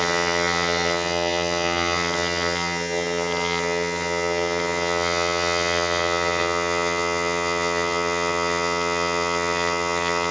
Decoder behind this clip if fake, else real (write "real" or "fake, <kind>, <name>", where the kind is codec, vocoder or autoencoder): fake, vocoder, HiFi-GAN